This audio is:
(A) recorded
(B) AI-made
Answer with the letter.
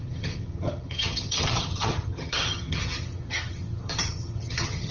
B